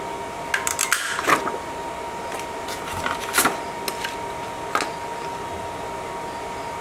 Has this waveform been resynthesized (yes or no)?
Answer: no